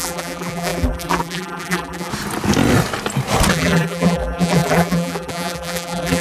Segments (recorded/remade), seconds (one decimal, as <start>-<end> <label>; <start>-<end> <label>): 0.0-2.1 remade; 2.1-3.5 recorded; 3.5-6.2 remade